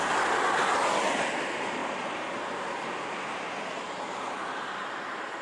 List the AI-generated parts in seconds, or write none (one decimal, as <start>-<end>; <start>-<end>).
none